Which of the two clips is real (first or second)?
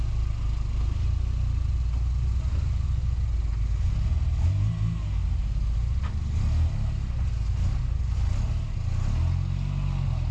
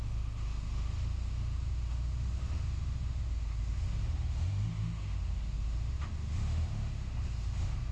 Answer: first